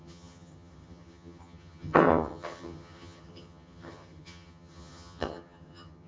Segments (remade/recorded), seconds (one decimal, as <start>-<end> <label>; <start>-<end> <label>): 0.0-6.1 remade